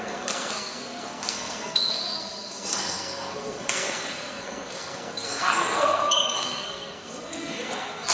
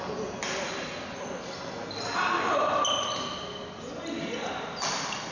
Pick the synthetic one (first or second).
first